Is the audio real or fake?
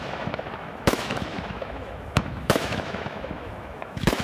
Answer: fake